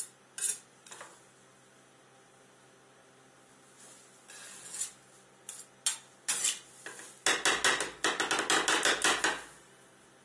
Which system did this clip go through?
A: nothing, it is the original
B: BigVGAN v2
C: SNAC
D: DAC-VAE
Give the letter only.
A